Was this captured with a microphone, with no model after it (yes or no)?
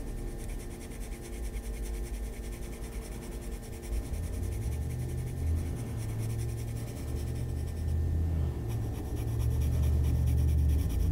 yes